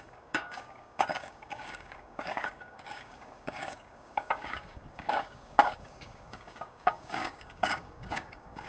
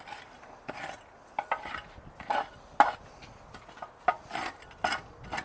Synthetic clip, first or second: first